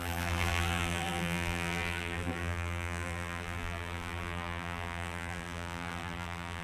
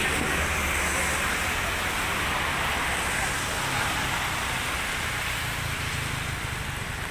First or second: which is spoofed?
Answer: first